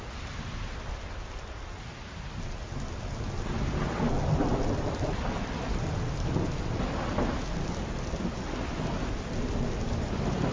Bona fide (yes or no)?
yes